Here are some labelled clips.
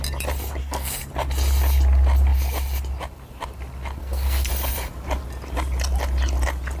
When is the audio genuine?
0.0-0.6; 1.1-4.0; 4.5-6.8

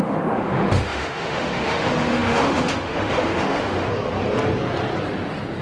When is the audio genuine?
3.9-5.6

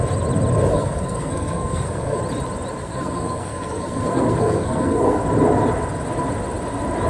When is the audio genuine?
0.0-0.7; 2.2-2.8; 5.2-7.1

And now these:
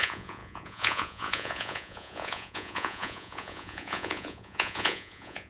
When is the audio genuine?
none

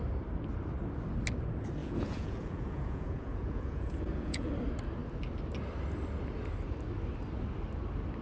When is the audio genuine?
0.0-1.8; 4.5-8.2

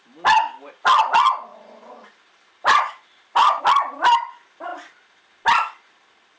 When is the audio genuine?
0.0-1.5; 3.6-6.4

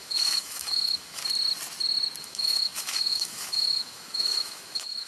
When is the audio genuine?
1.2-2.2